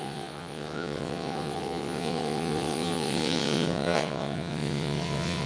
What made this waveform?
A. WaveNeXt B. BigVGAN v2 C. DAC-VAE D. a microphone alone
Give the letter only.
A